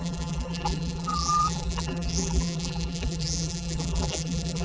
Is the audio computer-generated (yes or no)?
yes